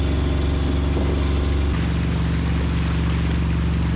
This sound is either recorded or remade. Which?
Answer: recorded